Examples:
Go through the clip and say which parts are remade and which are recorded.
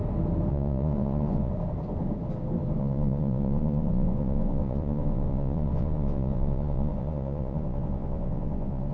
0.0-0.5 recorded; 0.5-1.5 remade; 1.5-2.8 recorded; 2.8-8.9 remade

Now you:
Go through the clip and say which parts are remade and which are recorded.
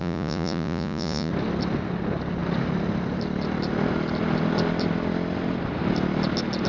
0.0-1.3 remade; 1.3-6.7 recorded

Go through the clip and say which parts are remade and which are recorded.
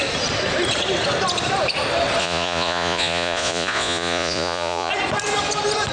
0.0-2.2 recorded; 2.2-4.9 remade; 4.9-5.9 recorded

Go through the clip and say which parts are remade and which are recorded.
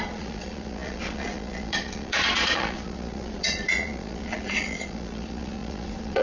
0.0-6.2 remade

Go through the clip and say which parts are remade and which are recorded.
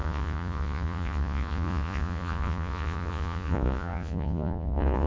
0.0-5.1 remade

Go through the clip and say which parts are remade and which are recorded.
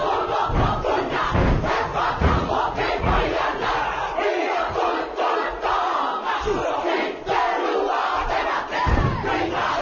0.0-1.9 recorded; 1.9-6.0 remade; 6.0-9.8 recorded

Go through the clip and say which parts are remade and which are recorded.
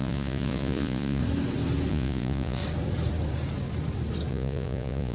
0.0-1.2 remade; 1.2-1.9 recorded; 1.9-2.6 remade; 2.6-4.3 recorded; 4.3-5.1 remade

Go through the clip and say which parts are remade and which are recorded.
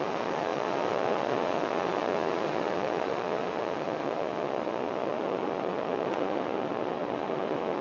0.0-7.8 remade